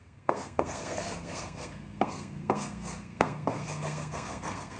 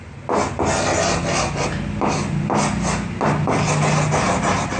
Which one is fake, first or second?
first